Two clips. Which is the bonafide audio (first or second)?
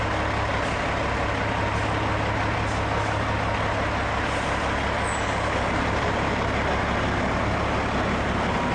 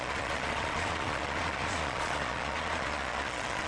first